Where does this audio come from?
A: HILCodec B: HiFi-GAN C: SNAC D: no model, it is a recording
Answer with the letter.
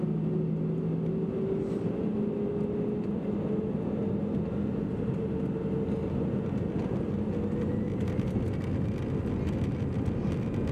D